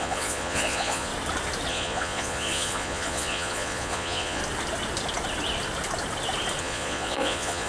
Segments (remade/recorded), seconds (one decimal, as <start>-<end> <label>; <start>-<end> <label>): 0.0-1.1 remade; 1.1-1.7 recorded; 1.7-4.4 remade; 4.4-6.6 recorded; 6.6-7.7 remade